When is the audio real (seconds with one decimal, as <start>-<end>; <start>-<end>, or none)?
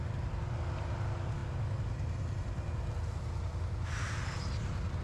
0.0-5.0